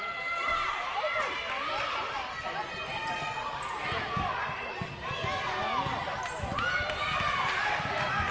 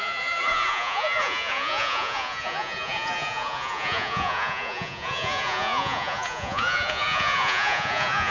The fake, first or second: second